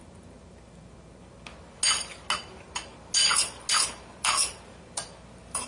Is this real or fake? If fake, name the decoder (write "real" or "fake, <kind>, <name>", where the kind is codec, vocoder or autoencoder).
real